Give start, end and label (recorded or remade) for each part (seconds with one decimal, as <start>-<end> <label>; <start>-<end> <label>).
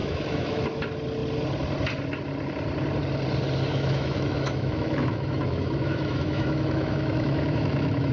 0.0-0.6 remade; 0.6-3.7 recorded; 3.7-8.1 remade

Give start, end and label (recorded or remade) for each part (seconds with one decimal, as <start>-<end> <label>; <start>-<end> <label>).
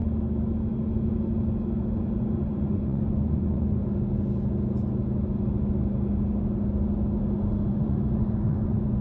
0.0-2.2 recorded; 2.2-3.8 remade; 3.8-7.7 recorded; 7.7-9.0 remade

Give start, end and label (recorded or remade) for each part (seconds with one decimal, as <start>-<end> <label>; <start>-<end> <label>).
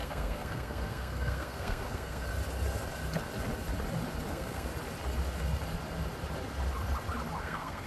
0.0-2.3 remade; 2.3-4.3 recorded; 4.3-4.7 remade; 4.7-7.4 recorded; 7.4-7.9 remade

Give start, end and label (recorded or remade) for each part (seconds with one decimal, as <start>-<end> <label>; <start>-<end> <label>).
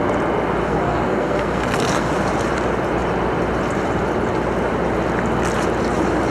0.0-0.6 recorded; 0.6-2.1 remade; 2.1-6.3 recorded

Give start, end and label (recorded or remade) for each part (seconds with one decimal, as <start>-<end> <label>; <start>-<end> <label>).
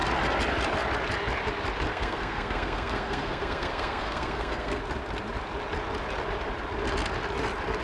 0.0-1.9 recorded; 1.9-4.8 remade; 4.8-7.8 recorded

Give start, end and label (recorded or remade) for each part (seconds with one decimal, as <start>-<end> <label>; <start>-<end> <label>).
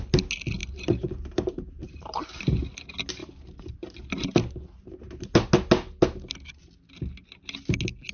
0.0-0.6 recorded; 0.6-2.2 remade; 2.2-3.2 recorded; 3.2-4.0 remade; 4.0-8.1 recorded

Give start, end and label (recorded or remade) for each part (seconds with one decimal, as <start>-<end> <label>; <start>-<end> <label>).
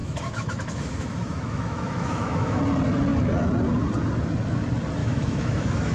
0.0-2.6 remade; 2.6-5.0 recorded; 5.0-5.9 remade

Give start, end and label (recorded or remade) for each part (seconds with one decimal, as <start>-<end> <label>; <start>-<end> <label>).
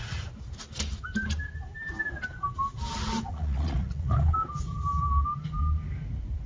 0.0-3.3 recorded; 3.3-4.2 remade; 4.2-6.5 recorded